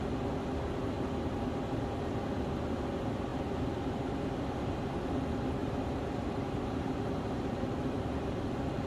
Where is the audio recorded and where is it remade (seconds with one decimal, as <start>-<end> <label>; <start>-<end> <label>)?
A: 0.0-5.6 recorded; 5.6-8.4 remade; 8.4-8.9 recorded